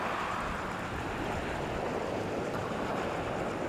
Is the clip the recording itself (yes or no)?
yes